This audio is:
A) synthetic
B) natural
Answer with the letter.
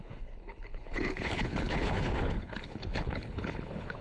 A